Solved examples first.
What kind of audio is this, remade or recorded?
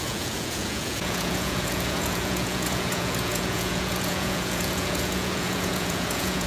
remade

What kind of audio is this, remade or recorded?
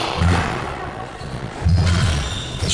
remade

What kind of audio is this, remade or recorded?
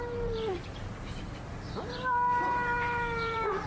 remade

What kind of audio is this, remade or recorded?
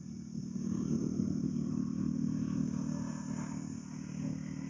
recorded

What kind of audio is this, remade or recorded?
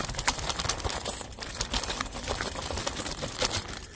recorded